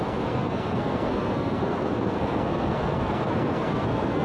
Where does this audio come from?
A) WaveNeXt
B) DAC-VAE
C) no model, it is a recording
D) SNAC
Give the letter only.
D